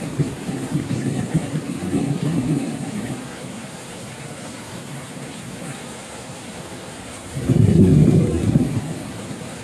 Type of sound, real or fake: fake